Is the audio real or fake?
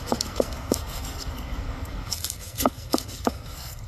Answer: fake